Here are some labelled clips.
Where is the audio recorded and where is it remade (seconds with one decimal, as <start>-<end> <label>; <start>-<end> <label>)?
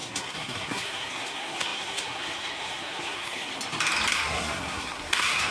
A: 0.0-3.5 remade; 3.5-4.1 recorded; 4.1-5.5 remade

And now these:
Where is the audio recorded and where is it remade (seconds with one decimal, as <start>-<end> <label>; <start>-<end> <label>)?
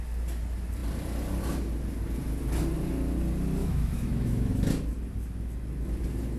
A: 0.0-3.6 recorded; 3.6-4.5 remade; 4.5-6.4 recorded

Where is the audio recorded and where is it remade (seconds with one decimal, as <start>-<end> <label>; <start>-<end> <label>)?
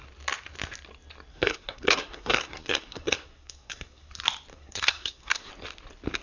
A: 0.0-1.3 recorded; 1.3-4.1 remade; 4.1-4.5 recorded; 4.5-5.5 remade; 5.5-6.2 recorded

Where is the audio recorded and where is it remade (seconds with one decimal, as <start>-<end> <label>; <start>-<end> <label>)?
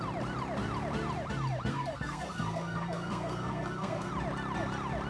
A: 0.0-1.7 recorded; 1.7-4.1 remade; 4.1-5.1 recorded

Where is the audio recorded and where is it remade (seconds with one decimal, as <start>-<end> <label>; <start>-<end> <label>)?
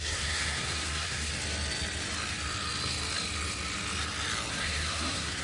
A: 0.0-1.3 remade; 1.3-4.5 recorded; 4.5-5.4 remade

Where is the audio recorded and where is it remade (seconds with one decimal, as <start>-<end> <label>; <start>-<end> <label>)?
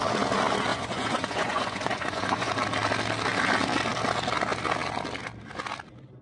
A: 0.0-0.7 recorded; 0.7-2.5 remade; 2.5-6.2 recorded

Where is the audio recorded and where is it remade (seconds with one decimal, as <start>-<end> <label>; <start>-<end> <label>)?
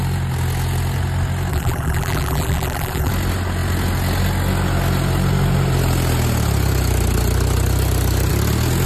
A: 0.0-1.5 recorded; 1.5-3.1 remade; 3.1-8.9 recorded